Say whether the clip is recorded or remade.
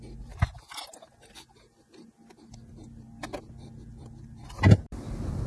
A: recorded